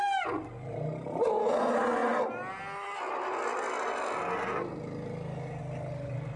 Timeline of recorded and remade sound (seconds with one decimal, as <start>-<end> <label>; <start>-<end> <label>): 0.0-6.4 recorded